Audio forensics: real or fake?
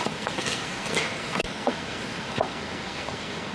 fake